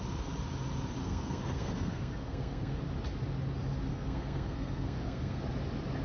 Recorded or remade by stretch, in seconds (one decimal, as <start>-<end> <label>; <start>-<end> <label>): 0.0-1.0 recorded; 1.0-2.8 remade; 2.8-3.9 recorded; 3.9-5.4 remade; 5.4-6.0 recorded